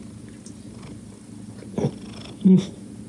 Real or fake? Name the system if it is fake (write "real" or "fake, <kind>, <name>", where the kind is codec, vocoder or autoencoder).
real